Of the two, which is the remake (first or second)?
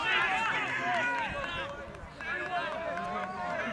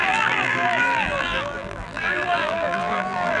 second